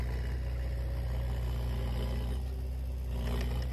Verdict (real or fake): real